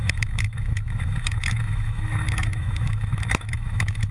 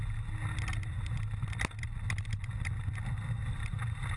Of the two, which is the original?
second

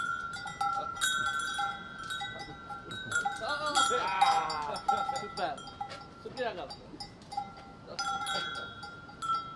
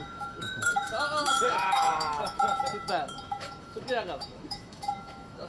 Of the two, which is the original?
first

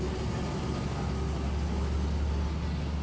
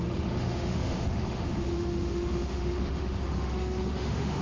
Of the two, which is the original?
first